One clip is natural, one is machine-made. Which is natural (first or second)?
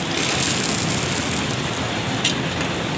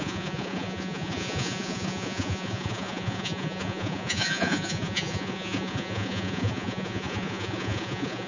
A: first